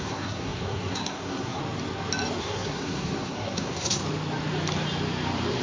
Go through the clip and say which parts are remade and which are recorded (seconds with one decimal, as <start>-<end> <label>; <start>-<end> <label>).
0.0-1.6 remade; 1.6-2.4 recorded; 2.4-4.0 remade; 4.0-5.6 recorded